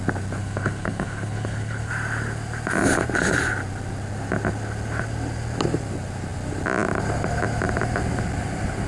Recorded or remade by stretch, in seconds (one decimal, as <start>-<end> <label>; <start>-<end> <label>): 0.0-0.4 recorded; 0.4-1.9 remade; 1.9-8.9 recorded